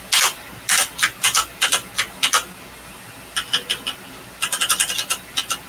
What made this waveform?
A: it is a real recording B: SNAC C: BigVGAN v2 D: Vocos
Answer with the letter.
A